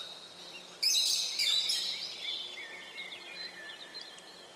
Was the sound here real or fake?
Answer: real